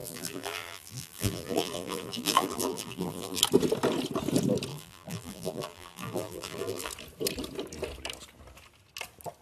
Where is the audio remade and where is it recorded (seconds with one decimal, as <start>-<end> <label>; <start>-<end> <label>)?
0.0-3.4 remade; 3.4-4.7 recorded; 4.7-6.9 remade; 6.9-9.4 recorded